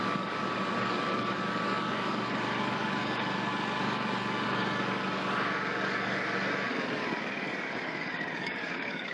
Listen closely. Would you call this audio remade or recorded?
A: remade